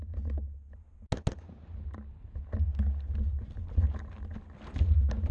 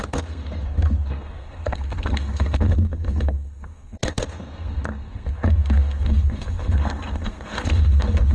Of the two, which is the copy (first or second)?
second